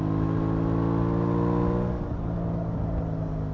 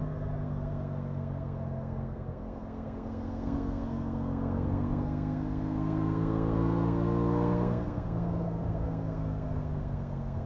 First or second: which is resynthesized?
second